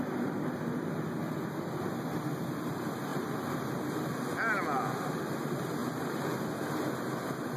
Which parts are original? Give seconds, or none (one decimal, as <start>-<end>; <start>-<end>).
0.0-3.1; 4.1-5.8; 6.4-7.6